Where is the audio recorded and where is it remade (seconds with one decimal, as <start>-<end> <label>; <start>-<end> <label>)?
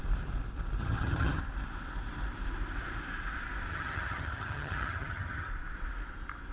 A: 0.0-0.8 recorded; 0.8-1.4 remade; 1.4-3.7 recorded; 3.7-5.5 remade; 5.5-6.5 recorded